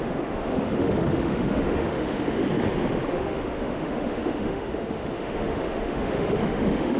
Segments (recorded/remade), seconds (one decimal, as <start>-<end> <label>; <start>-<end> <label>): 0.0-2.4 remade; 2.4-3.1 recorded; 3.1-7.0 remade